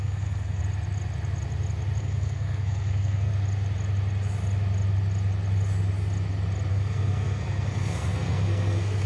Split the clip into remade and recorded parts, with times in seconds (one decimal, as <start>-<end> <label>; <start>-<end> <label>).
0.0-0.6 remade; 0.6-2.0 recorded; 2.0-3.3 remade; 3.3-6.7 recorded; 6.7-9.1 remade